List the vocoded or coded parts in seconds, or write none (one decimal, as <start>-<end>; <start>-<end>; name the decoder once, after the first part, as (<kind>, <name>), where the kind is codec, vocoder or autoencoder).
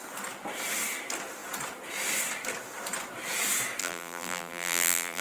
3.8-5.2 (vocoder, BigVGAN v2)